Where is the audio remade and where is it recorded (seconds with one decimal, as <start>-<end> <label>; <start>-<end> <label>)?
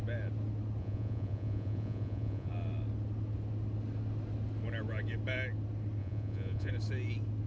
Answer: 0.0-0.8 recorded; 0.8-2.5 remade; 2.5-6.0 recorded; 6.0-6.7 remade; 6.7-7.5 recorded